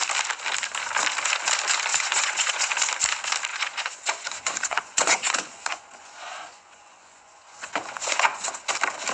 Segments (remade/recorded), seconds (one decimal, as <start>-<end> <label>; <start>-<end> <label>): 0.0-1.9 recorded; 1.9-2.7 remade; 2.7-3.5 recorded; 3.5-8.6 remade; 8.6-9.1 recorded